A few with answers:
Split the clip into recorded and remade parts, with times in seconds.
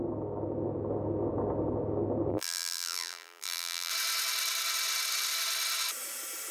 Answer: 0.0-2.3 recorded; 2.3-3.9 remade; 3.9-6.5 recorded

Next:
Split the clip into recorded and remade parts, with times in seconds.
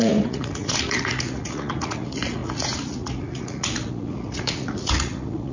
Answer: 0.0-5.5 remade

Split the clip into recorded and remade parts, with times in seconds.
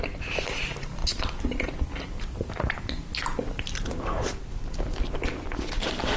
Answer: 0.0-6.2 recorded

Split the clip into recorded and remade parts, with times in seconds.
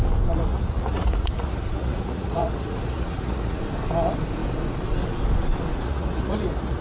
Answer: 0.0-0.5 recorded; 0.5-3.6 remade; 3.6-5.7 recorded; 5.7-6.8 remade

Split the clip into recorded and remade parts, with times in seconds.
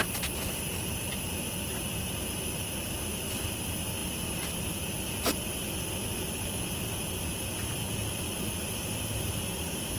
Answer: 0.0-4.0 recorded; 4.0-4.5 remade; 4.5-10.0 recorded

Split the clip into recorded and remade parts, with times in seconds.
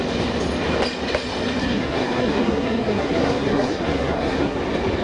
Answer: 0.0-1.6 recorded; 1.6-4.6 remade; 4.6-5.0 recorded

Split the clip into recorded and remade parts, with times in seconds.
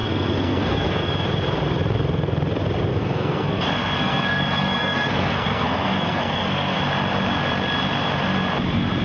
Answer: 0.0-1.1 remade; 1.1-2.9 recorded; 2.9-6.8 remade; 6.8-9.0 recorded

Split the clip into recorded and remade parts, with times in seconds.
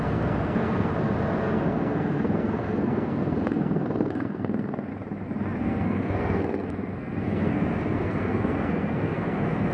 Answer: 0.0-0.9 remade; 0.9-1.4 recorded; 1.4-4.9 remade; 4.9-5.6 recorded; 5.6-9.7 remade